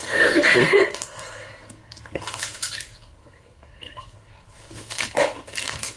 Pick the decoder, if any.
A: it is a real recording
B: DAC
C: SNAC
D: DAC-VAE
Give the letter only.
C